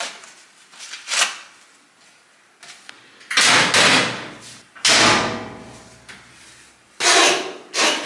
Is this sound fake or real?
real